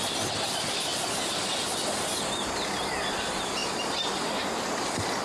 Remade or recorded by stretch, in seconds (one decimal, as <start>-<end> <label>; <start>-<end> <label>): 0.0-5.2 recorded